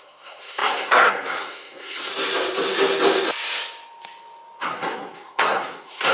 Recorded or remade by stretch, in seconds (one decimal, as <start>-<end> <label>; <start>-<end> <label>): 0.0-2.1 remade; 2.1-4.6 recorded; 4.6-6.1 remade